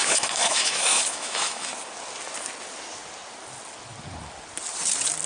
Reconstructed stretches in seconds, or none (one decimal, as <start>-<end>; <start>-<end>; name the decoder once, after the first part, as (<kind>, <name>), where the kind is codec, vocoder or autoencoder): 0.0-1.7 (autoencoder, DAC-VAE)